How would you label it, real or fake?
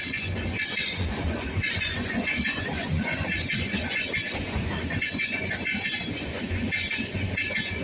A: fake